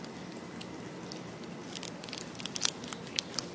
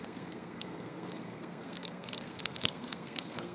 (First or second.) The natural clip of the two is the first